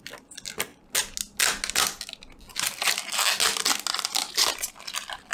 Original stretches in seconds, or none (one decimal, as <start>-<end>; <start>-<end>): 0.0-5.3